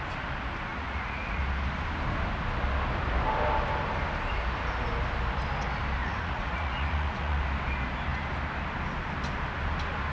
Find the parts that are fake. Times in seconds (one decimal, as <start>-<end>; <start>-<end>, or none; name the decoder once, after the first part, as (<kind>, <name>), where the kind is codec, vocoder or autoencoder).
0.7-1.4 (vocoder, Vocos); 6.0-7.4